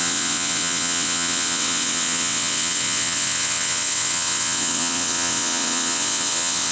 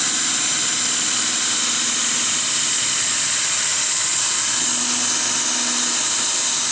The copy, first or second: first